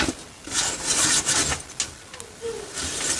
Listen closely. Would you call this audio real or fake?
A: real